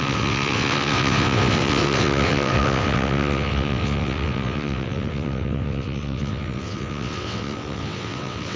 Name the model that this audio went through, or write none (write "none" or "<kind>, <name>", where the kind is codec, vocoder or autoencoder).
vocoder, WaveNeXt